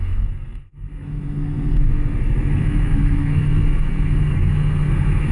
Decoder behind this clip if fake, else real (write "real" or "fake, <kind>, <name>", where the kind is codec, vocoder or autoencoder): fake, codec, SNAC